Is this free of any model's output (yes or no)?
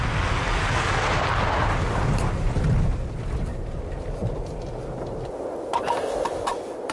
yes